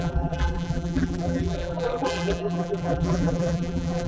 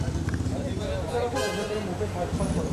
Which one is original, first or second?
second